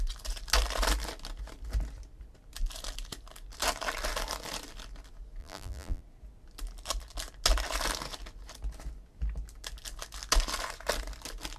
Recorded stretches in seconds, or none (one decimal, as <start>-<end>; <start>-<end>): 0.0-5.4; 6.0-11.6